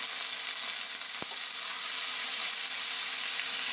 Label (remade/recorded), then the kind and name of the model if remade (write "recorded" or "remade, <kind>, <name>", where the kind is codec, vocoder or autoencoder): recorded